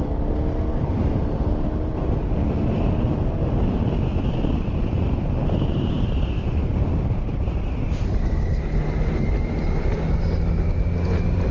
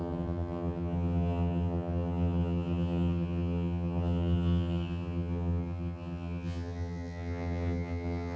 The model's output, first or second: second